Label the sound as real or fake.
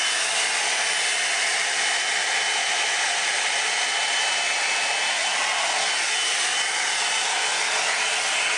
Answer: real